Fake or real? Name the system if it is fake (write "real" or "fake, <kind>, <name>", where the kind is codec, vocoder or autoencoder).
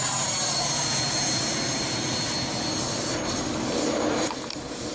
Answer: real